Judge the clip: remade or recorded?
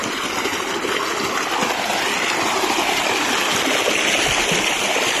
recorded